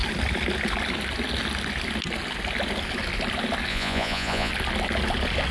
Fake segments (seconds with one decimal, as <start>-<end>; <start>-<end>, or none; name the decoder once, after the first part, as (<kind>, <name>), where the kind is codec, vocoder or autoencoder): 3.7-4.5 (vocoder, Vocos)